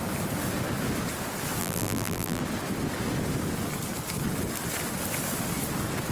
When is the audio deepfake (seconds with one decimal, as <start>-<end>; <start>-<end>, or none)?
1.6-2.4